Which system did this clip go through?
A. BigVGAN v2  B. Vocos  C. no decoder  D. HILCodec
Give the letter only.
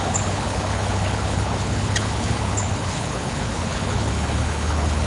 D